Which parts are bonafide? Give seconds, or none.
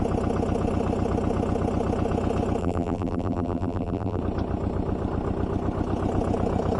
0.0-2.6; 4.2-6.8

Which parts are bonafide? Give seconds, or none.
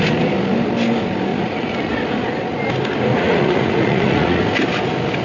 0.0-1.3; 1.9-3.1; 4.4-5.2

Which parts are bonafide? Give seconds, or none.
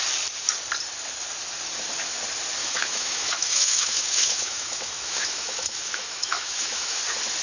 0.0-2.6; 7.0-7.4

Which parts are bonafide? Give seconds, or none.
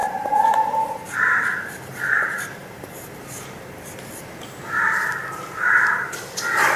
2.1-2.6